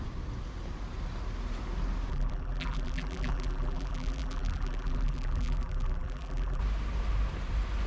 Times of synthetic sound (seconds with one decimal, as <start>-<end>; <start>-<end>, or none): 2.1-6.6